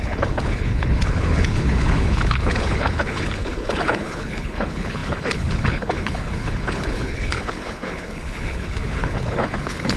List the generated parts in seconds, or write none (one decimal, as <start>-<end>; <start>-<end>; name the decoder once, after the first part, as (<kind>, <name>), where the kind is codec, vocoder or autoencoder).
0.0-10.0 (codec, HILCodec)